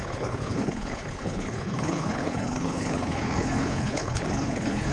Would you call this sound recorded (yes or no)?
no